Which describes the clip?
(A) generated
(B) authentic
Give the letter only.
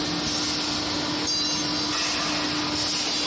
B